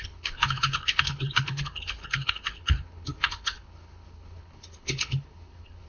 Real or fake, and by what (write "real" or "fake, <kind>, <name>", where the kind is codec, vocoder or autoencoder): fake, codec, HILCodec